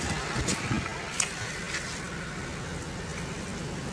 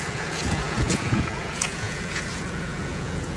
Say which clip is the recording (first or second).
first